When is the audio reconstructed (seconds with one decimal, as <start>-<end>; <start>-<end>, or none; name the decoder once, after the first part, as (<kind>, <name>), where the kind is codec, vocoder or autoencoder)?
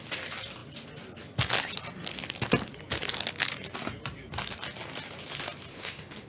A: 5.7-6.3 (autoencoder, DAC-VAE)